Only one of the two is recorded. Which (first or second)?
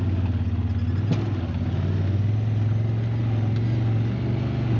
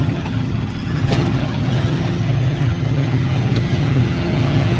first